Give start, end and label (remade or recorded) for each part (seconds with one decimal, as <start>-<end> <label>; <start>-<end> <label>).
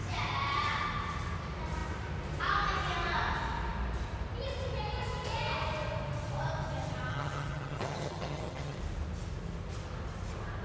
0.0-7.1 recorded; 7.1-8.8 remade; 8.8-10.6 recorded